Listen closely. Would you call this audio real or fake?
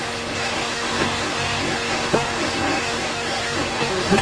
fake